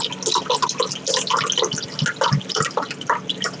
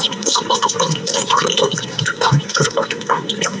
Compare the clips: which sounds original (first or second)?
first